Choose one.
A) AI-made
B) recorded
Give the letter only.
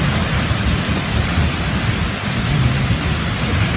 B